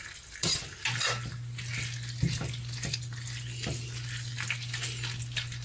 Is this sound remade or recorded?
recorded